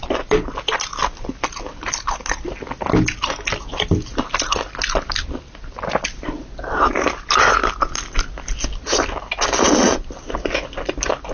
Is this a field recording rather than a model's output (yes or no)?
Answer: yes